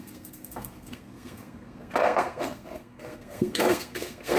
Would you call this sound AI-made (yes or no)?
yes